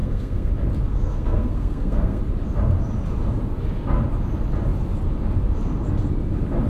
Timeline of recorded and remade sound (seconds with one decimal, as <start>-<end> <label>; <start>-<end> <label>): 0.0-0.5 remade; 0.5-0.9 recorded; 0.9-2.2 remade; 2.2-6.7 recorded